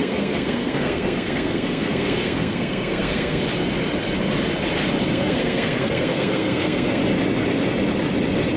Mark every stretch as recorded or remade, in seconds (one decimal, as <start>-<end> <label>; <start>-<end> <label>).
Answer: 0.0-3.4 remade; 3.4-5.1 recorded; 5.1-7.0 remade; 7.0-8.6 recorded

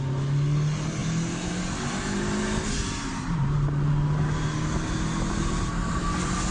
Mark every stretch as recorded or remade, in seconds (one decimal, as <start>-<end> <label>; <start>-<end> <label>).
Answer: 0.0-6.5 recorded

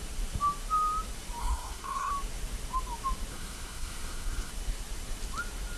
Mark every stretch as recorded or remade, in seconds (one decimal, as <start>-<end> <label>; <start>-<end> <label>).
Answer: 0.0-1.4 recorded; 1.4-2.1 remade; 2.1-3.3 recorded; 3.3-4.5 remade; 4.5-5.8 recorded

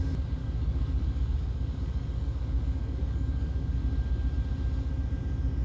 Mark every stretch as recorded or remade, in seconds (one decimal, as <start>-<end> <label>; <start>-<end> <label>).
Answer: 0.0-0.4 recorded; 0.4-3.8 remade; 3.8-5.6 recorded

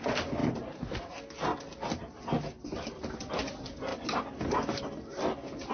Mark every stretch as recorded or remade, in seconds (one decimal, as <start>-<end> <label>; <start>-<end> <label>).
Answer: 0.0-5.7 recorded

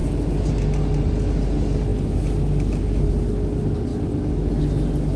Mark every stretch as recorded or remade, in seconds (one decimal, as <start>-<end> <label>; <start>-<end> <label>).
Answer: 0.0-5.2 recorded

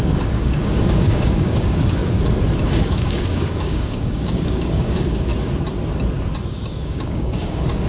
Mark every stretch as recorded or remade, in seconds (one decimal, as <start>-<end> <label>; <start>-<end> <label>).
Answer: 0.0-2.0 remade; 2.0-2.6 recorded; 2.6-5.3 remade; 5.3-6.5 recorded; 6.5-7.9 remade

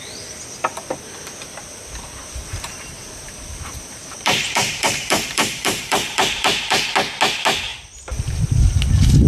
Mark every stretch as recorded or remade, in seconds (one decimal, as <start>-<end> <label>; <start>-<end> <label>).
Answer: 0.0-2.2 recorded; 2.2-6.9 remade; 6.9-9.3 recorded